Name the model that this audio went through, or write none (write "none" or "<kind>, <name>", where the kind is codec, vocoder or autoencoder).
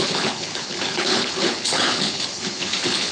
codec, HILCodec